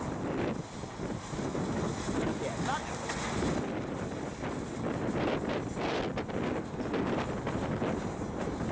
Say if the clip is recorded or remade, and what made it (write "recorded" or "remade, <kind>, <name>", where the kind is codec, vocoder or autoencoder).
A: recorded